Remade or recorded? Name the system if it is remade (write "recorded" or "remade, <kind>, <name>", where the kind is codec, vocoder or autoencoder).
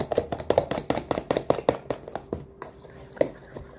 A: recorded